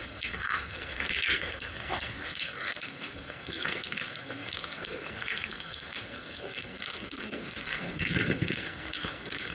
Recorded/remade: remade